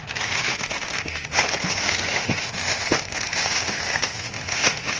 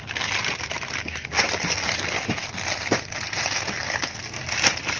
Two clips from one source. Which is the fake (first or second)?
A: first